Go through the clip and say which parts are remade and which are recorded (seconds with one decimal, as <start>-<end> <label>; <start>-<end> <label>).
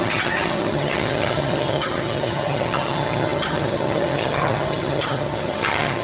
0.0-6.0 remade